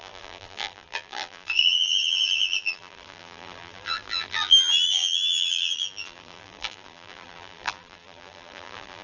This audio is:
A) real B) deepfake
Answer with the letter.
B